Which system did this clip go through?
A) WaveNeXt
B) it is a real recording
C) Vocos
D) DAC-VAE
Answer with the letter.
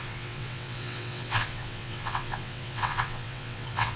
A